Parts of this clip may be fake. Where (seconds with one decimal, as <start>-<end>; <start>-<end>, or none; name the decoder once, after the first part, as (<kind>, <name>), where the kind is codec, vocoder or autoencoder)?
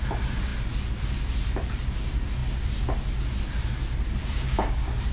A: 4.2-5.1 (codec, DAC)